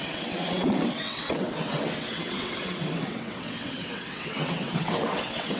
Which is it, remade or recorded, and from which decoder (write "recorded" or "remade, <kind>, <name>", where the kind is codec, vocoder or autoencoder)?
remade, vocoder, WaveNeXt